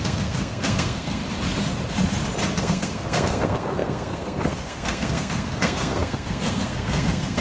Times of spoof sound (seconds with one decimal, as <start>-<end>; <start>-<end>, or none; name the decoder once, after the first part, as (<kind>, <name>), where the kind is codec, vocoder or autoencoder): 0.0-1.2 (codec, SNAC); 2.6-7.4